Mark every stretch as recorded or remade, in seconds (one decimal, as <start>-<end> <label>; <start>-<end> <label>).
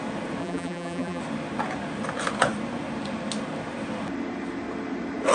0.0-0.4 recorded; 0.4-1.2 remade; 1.2-5.3 recorded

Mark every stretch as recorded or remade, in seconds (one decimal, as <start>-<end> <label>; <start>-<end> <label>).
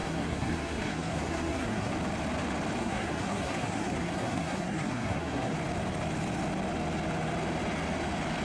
0.0-1.9 remade; 1.9-2.8 recorded; 2.8-5.5 remade; 5.5-8.4 recorded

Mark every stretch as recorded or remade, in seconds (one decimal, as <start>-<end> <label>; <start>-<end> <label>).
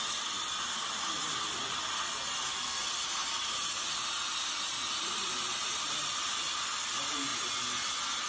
0.0-8.3 recorded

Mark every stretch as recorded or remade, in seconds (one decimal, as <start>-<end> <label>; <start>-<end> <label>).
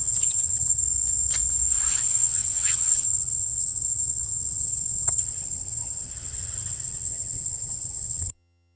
0.0-0.8 remade; 0.8-2.0 recorded; 2.0-8.8 remade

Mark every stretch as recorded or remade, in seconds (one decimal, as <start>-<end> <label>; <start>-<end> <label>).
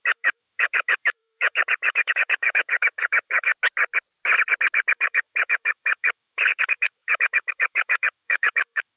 0.0-3.5 remade; 3.5-4.9 recorded; 4.9-9.0 remade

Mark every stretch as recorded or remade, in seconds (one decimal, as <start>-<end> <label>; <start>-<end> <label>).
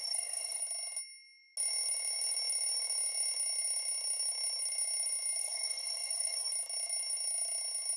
0.0-0.6 remade; 0.6-5.4 recorded; 5.4-6.5 remade; 6.5-8.0 recorded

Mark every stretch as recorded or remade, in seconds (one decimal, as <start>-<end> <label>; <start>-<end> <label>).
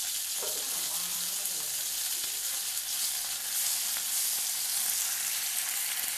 0.0-6.2 recorded